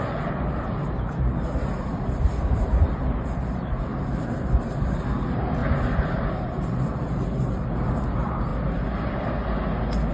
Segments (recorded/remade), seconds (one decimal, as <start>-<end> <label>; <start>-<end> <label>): 0.0-5.6 remade; 5.6-6.3 recorded; 6.3-8.5 remade; 8.5-10.1 recorded